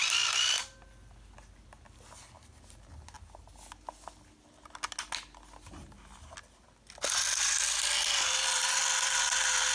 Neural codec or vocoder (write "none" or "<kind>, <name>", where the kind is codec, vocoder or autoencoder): none